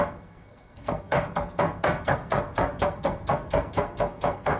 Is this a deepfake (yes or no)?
yes